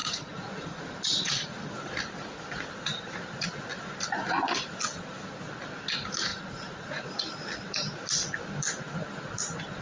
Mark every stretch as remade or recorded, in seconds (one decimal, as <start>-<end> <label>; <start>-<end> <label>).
0.0-1.6 remade; 1.6-6.3 recorded; 6.3-7.1 remade; 7.1-9.8 recorded